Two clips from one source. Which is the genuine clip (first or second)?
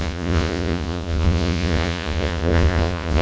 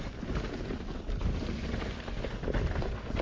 second